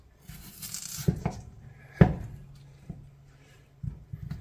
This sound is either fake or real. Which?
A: real